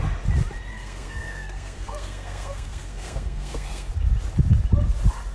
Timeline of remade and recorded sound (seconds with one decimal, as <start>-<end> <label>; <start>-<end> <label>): 0.0-0.7 recorded; 0.7-3.9 remade; 3.9-5.3 recorded